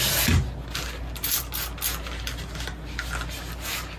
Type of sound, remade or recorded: recorded